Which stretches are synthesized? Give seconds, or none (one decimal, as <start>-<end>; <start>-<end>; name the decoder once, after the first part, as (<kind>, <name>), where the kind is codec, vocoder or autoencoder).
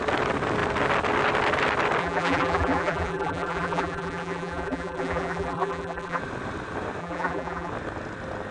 2.0-6.2 (vocoder, BigVGAN v2); 7.0-7.7